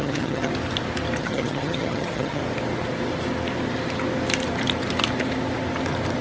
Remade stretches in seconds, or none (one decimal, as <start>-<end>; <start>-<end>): 0.0-0.5; 1.2-2.4